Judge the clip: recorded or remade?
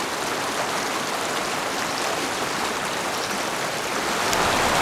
recorded